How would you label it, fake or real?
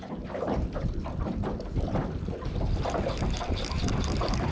real